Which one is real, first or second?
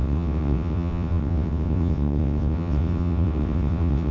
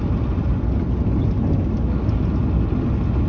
second